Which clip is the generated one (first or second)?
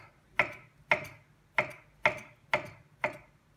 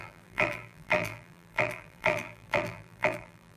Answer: second